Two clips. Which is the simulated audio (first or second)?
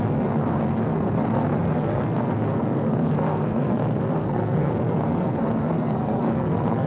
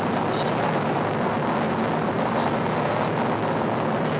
first